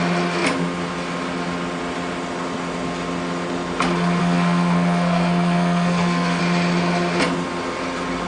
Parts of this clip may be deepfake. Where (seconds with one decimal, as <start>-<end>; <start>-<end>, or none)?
4.2-6.4